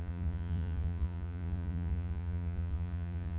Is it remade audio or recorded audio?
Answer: remade